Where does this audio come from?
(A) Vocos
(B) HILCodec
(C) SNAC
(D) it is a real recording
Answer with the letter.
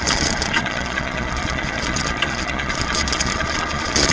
A